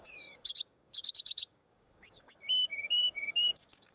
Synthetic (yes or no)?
yes